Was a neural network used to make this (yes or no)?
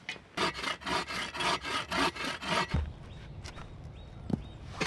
no